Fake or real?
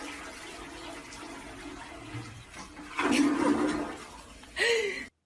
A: fake